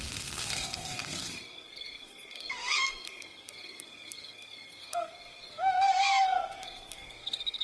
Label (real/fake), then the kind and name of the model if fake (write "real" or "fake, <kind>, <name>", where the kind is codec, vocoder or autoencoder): fake, codec, SNAC